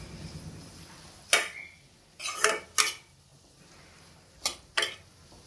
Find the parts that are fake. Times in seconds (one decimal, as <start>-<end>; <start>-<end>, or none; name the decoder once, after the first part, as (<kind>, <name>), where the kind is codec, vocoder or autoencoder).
none